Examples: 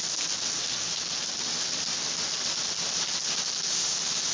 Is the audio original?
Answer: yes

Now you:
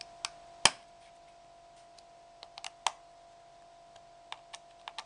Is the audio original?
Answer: yes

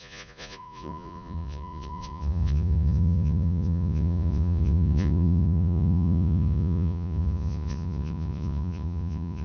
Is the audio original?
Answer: no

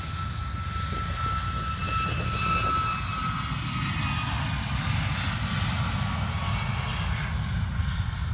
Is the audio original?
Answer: yes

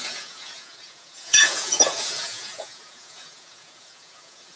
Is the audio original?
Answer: no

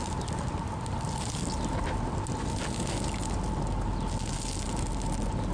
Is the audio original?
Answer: yes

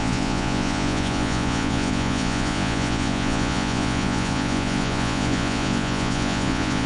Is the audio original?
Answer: no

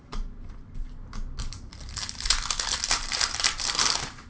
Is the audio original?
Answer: yes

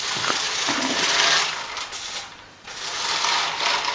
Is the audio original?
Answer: yes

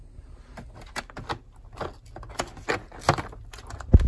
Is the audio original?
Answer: yes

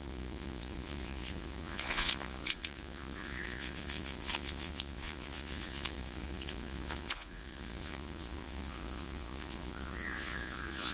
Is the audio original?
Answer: no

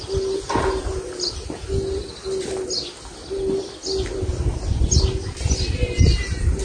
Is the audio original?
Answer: yes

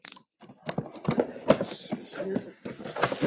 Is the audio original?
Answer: yes